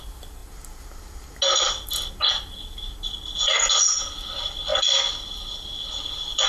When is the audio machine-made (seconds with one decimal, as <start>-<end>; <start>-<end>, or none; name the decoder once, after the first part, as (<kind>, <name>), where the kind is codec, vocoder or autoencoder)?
none